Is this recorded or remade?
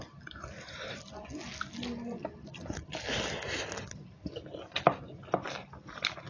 recorded